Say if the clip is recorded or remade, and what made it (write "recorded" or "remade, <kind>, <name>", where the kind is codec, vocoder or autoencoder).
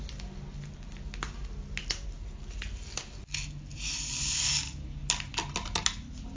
recorded